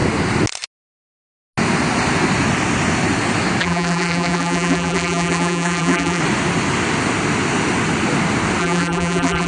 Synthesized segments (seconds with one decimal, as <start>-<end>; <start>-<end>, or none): 3.6-6.2; 8.6-9.5